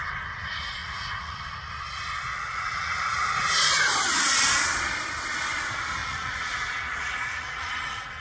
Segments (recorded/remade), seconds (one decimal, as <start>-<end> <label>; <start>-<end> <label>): 0.0-0.8 recorded; 0.8-1.4 remade; 1.4-2.3 recorded; 2.3-3.3 remade; 3.3-6.0 recorded; 6.0-8.2 remade